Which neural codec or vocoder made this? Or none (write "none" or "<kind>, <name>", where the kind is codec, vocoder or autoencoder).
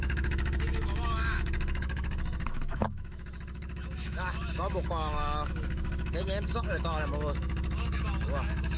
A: autoencoder, DAC-VAE